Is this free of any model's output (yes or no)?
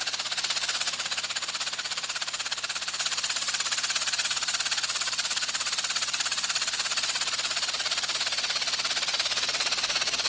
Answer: no